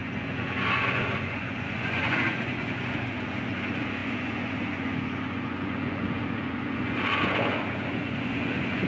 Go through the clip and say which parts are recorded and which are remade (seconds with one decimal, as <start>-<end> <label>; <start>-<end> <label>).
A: 0.0-8.9 remade